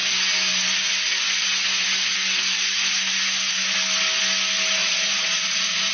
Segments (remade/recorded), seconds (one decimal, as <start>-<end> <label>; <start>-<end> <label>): 0.0-4.8 recorded; 4.8-5.9 remade